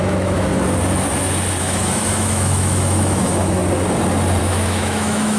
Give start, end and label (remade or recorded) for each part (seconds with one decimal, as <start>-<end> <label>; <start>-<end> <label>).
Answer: 0.0-0.5 remade; 0.5-1.6 recorded; 1.6-3.6 remade; 3.6-4.4 recorded; 4.4-5.4 remade